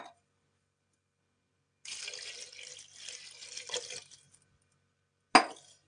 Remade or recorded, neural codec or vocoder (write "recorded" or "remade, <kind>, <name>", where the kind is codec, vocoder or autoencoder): recorded